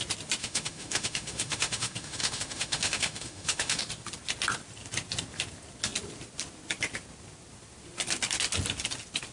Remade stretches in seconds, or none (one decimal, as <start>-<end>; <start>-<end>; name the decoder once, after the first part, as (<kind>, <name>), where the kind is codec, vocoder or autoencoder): 0.4-3.8 (autoencoder, DAC-VAE)